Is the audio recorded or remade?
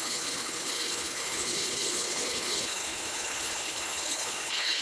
remade